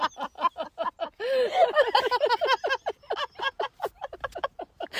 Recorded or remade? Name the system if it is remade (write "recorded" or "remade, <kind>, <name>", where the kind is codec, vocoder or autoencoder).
recorded